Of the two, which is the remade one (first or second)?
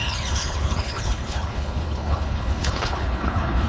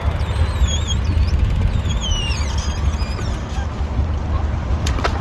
first